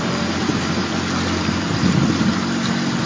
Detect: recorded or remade recorded